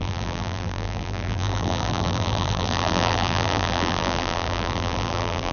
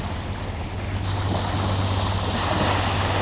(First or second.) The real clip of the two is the second